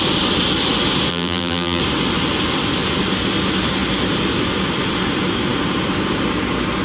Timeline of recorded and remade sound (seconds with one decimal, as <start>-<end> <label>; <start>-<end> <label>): 0.0-1.1 recorded; 1.1-1.8 remade; 1.8-6.8 recorded